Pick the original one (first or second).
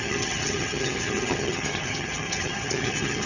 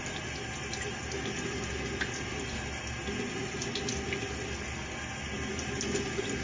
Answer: second